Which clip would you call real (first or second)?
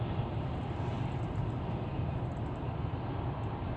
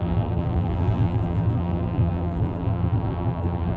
first